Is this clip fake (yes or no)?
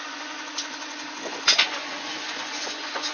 yes